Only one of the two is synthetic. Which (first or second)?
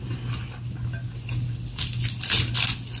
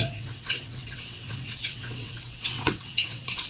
second